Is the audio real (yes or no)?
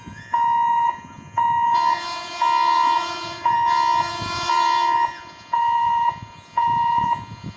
no